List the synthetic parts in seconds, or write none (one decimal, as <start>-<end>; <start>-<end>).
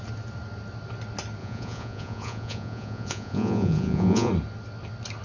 1.4-4.3